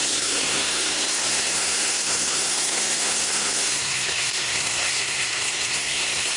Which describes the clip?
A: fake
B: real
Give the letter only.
A